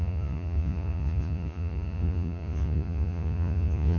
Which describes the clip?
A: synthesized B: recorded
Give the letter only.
A